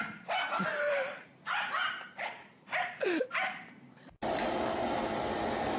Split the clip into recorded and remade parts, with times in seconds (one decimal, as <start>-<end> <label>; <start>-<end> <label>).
0.0-0.7 recorded; 0.7-4.2 remade; 4.2-5.8 recorded